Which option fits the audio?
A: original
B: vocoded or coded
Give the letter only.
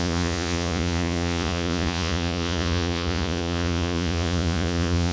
B